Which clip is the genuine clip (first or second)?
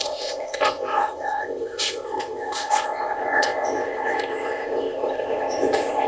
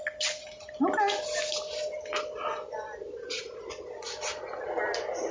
second